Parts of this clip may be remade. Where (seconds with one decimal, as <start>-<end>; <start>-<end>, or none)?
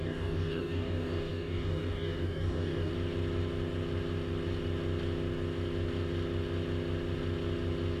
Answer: 0.0-2.9